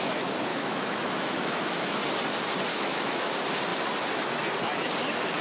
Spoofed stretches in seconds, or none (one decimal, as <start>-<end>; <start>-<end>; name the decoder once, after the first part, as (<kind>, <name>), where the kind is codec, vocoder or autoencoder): 0.5-2.0 (autoencoder, DAC-VAE); 2.7-3.3